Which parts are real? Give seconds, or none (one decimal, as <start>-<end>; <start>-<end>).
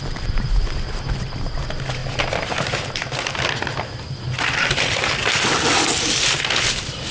0.0-7.1